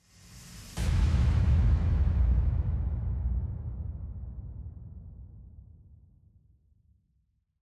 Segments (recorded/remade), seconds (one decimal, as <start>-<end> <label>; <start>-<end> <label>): 0.0-0.8 recorded; 0.8-5.4 remade; 5.4-7.6 recorded